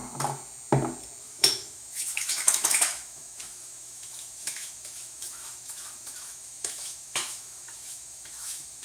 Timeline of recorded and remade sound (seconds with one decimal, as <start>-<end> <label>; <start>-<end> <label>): 0.0-1.2 recorded; 1.2-8.8 remade